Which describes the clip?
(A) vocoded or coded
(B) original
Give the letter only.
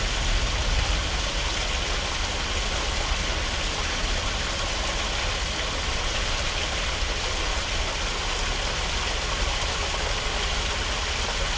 B